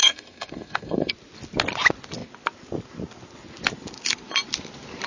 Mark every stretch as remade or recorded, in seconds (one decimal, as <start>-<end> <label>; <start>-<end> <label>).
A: 0.0-1.1 remade; 1.1-5.1 recorded